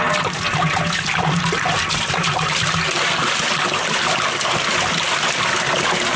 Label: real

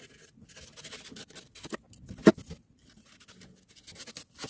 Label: real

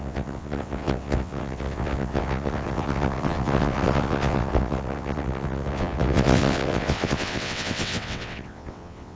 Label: fake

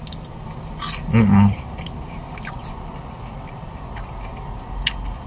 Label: real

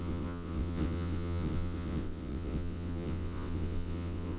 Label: fake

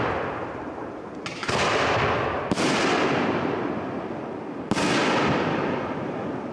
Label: real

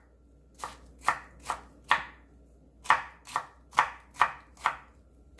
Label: real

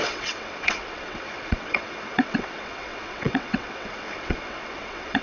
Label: fake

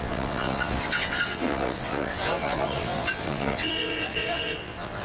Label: fake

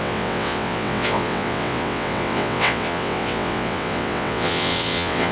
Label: fake